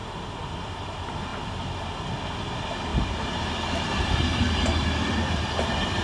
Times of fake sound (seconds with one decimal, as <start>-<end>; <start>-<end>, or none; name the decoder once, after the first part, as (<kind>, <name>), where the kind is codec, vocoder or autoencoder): none